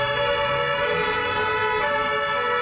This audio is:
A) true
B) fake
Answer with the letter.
A